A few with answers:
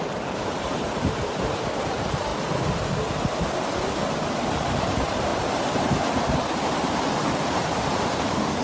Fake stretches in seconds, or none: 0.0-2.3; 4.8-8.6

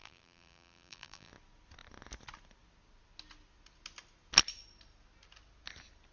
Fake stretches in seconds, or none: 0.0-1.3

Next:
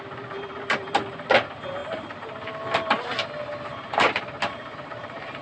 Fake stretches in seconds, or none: 0.0-5.4

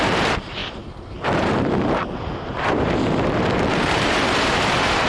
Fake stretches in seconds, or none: 0.0-5.1

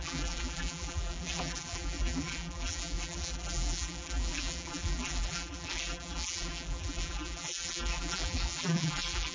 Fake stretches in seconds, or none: 0.0-9.3

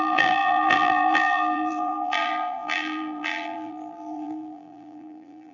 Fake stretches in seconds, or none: 0.0-5.5

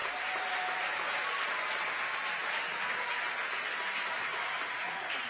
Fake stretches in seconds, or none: none